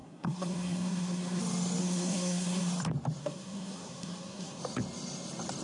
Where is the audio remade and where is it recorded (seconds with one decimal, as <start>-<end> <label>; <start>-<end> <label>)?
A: 0.0-1.4 remade; 1.4-1.8 recorded; 1.8-2.7 remade; 2.7-3.2 recorded; 3.2-4.6 remade; 4.6-5.6 recorded